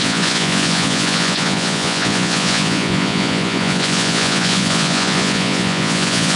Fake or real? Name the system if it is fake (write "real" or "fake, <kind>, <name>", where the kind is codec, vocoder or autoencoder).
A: fake, vocoder, Vocos